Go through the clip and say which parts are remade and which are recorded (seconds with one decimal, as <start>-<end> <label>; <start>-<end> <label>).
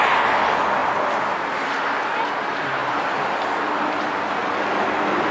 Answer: 0.0-5.3 recorded